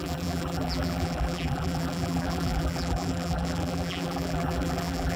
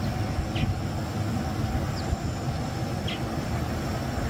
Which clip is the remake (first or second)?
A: first